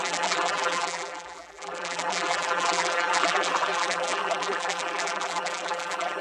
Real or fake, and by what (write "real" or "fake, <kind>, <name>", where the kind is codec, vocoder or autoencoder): fake, vocoder, BigVGAN v2